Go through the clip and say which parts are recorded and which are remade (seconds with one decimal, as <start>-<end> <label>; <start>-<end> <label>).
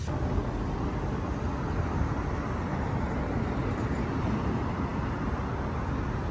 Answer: 0.0-6.3 recorded